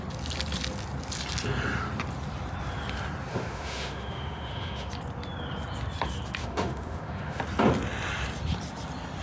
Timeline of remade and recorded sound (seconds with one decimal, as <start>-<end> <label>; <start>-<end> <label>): 0.0-3.3 recorded; 3.3-4.9 remade; 4.9-6.4 recorded; 6.4-7.4 remade; 7.4-9.2 recorded